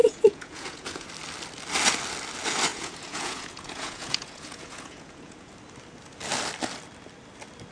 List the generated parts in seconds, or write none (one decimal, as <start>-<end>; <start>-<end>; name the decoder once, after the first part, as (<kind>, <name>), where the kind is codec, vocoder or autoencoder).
0.0-1.1 (vocoder, Vocos); 2.7-5.5